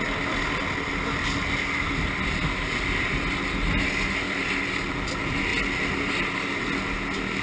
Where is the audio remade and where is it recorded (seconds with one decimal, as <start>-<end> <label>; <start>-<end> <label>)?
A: 0.0-7.4 recorded